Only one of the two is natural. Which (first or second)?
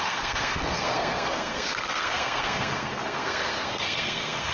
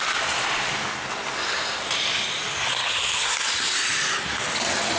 second